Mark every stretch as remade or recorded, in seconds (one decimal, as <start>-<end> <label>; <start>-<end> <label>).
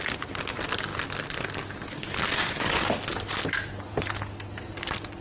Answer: 0.0-5.2 recorded